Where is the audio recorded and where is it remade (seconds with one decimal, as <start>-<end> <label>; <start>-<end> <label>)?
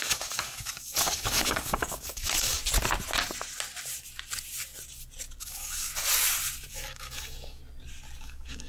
0.0-2.6 remade; 2.6-5.4 recorded; 5.4-5.9 remade; 5.9-6.7 recorded; 6.7-7.6 remade; 7.6-8.2 recorded; 8.2-8.7 remade